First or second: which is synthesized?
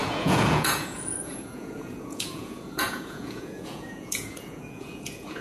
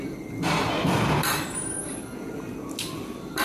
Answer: first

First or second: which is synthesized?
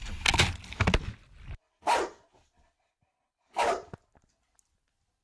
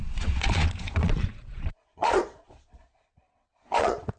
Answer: second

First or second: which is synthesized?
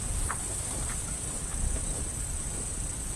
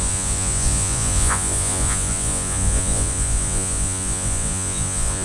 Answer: second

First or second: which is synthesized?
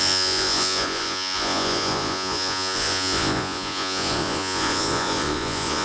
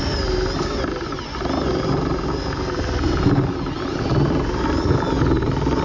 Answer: first